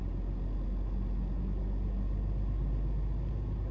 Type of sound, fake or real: real